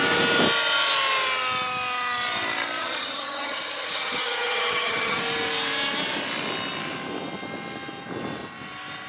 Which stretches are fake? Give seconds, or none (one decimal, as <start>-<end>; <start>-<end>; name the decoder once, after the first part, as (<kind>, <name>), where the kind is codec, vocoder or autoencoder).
2.8-5.2 (vocoder, HiFi-GAN)